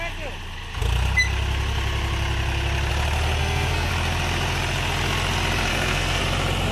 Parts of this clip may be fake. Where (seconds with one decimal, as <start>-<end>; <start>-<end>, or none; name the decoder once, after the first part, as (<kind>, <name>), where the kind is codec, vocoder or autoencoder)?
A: 3.4-3.9 (codec, SNAC); 5.7-6.2